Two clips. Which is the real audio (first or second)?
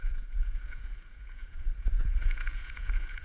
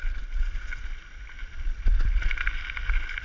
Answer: second